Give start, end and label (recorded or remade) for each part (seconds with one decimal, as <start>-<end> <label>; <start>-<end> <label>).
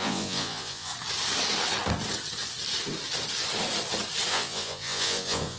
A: 0.0-0.9 remade; 0.9-4.3 recorded; 4.3-5.6 remade